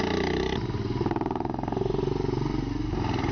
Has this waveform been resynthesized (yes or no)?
no